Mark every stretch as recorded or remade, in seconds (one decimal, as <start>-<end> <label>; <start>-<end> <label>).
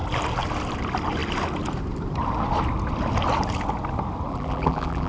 0.0-4.3 recorded; 4.3-5.1 remade